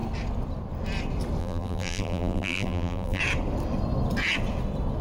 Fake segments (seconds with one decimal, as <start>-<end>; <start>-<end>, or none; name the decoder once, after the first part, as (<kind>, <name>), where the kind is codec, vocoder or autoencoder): 1.4-3.2 (vocoder, BigVGAN v2)